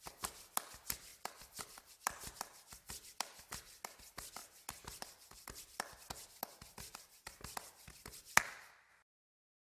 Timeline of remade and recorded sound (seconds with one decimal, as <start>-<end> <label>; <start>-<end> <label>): 0.0-1.1 recorded; 1.1-3.4 remade; 3.4-4.4 recorded; 4.4-5.9 remade; 5.9-8.4 recorded; 8.4-8.9 remade; 8.9-9.7 recorded